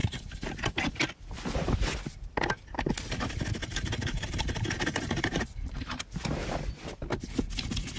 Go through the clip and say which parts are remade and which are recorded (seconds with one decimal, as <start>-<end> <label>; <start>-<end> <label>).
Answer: 0.0-0.5 remade; 0.5-3.6 recorded; 3.6-5.8 remade; 5.8-8.0 recorded